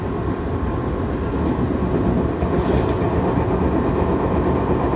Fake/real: real